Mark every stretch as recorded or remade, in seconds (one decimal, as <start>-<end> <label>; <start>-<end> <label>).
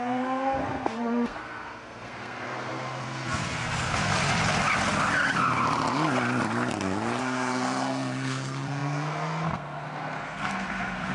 0.0-4.1 remade; 4.1-7.2 recorded; 7.2-11.1 remade